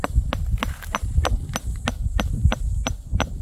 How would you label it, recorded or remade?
recorded